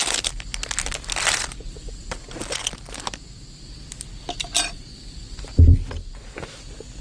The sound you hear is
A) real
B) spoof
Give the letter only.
A